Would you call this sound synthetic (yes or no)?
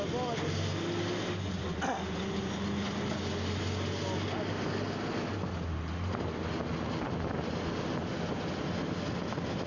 no